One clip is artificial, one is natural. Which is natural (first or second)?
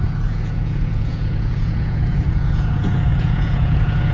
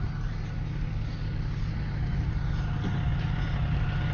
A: second